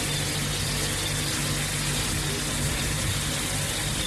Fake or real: real